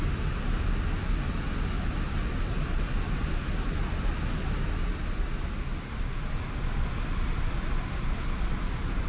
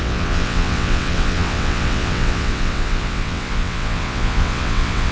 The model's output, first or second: second